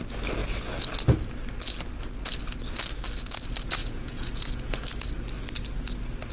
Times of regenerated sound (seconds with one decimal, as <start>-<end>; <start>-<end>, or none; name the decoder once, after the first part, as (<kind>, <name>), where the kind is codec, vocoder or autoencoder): 3.8-4.8 (vocoder, Vocos)